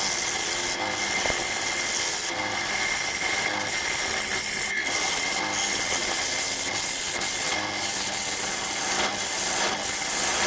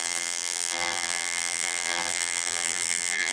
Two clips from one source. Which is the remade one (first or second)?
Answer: second